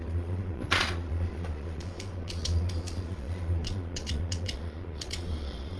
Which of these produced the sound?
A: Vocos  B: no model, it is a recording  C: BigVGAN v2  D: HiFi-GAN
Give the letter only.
A